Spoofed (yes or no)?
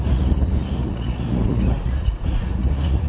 yes